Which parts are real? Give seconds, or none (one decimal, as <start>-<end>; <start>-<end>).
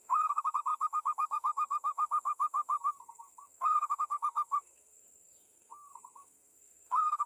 none